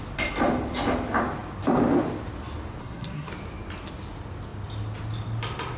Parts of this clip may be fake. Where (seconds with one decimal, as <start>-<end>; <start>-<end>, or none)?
2.8-3.3